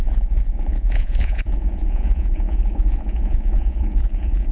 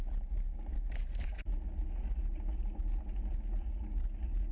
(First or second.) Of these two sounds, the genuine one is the second